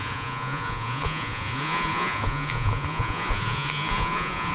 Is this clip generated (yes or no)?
yes